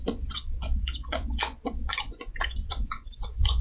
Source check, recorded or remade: remade